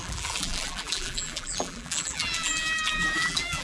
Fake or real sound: fake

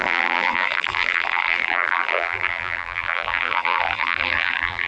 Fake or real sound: fake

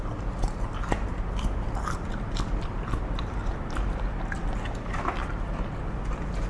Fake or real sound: real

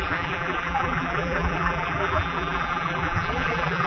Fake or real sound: fake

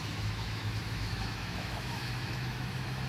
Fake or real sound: fake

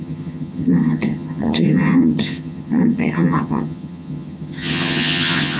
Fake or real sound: fake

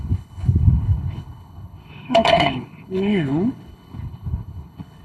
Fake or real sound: fake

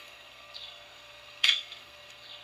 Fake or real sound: fake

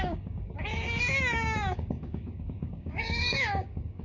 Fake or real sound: fake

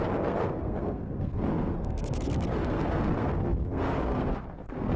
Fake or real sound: fake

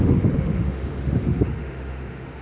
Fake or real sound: fake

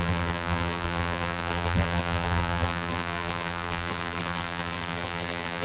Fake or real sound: fake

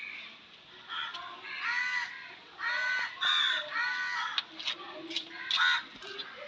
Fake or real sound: real